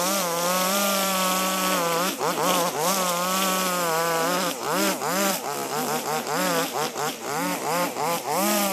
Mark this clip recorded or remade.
remade